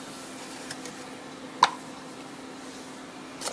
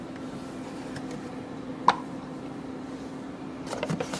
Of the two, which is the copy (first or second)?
second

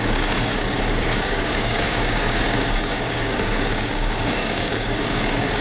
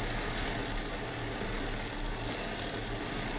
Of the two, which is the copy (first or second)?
first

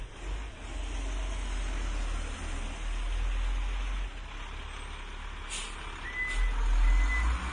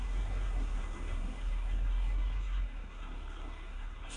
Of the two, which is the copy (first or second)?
second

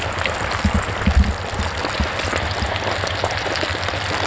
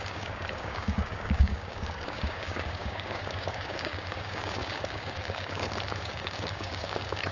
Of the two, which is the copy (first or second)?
second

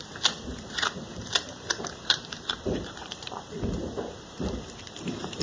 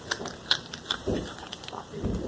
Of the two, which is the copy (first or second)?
first